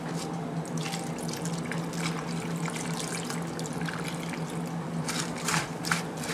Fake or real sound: real